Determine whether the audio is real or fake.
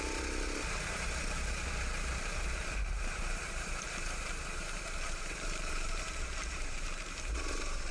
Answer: fake